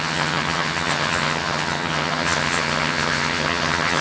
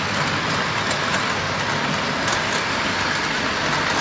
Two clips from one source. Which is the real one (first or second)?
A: second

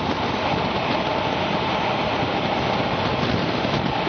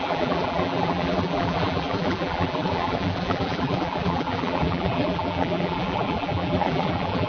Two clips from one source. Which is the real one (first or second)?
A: first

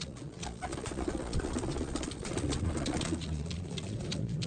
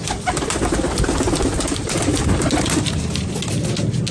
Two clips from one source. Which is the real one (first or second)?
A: second